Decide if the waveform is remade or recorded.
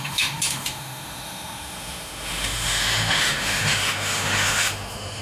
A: remade